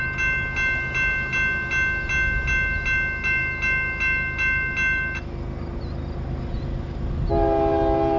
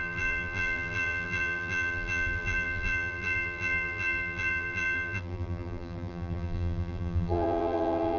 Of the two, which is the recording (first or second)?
first